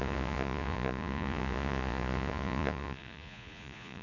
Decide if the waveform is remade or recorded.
remade